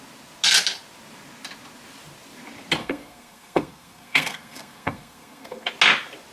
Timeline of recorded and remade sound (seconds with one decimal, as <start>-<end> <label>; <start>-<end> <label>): 0.0-2.8 recorded; 2.8-5.7 remade; 5.7-6.3 recorded